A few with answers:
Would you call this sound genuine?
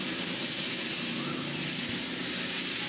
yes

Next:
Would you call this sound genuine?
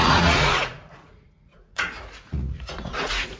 no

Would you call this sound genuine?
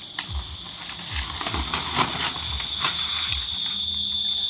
yes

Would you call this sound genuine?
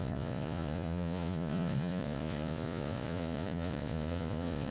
no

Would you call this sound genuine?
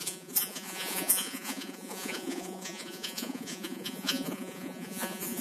no